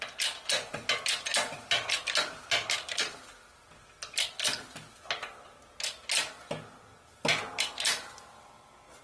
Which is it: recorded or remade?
recorded